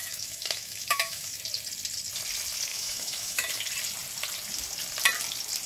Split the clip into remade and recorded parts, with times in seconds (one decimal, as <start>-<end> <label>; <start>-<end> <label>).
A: 0.0-1.4 remade; 1.4-2.7 recorded; 2.7-3.6 remade; 3.6-5.7 recorded